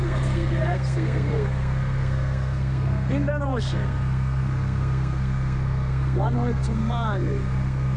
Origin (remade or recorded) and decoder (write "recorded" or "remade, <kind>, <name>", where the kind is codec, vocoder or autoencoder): remade, codec, SNAC